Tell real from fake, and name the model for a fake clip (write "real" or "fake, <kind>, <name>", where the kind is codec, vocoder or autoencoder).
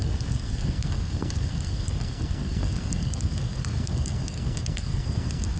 fake, codec, SNAC